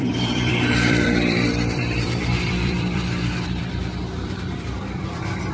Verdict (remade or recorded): remade